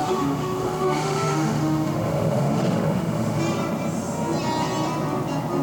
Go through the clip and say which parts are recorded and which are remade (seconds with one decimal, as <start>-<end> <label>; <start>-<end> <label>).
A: 0.0-3.4 remade; 3.4-5.6 recorded